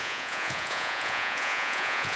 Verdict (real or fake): fake